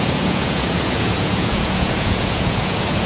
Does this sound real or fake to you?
fake